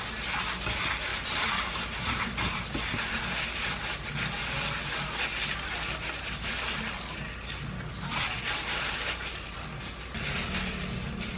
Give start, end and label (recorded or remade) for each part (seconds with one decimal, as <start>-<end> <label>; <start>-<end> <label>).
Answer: 0.0-1.1 recorded; 1.1-3.2 remade; 3.2-5.3 recorded; 5.3-6.7 remade; 6.7-11.4 recorded